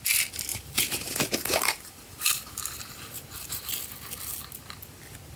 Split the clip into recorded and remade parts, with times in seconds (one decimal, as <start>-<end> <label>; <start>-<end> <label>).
0.0-0.5 recorded; 0.5-3.7 remade; 3.7-5.4 recorded